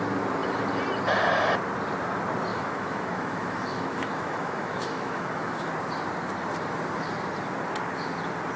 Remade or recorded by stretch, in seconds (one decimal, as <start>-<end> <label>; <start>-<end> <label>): 0.0-2.5 recorded; 2.5-5.7 remade; 5.7-8.6 recorded